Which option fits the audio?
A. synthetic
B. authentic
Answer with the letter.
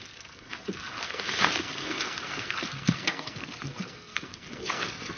A